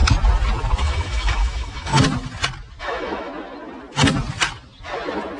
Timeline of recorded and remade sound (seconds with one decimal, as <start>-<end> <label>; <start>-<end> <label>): 0.0-0.8 recorded; 0.8-1.9 remade; 1.9-2.8 recorded; 2.8-3.3 remade; 3.3-5.4 recorded